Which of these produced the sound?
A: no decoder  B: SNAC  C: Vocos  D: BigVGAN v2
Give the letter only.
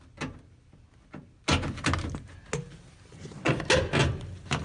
A